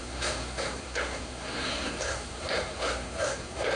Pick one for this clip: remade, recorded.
remade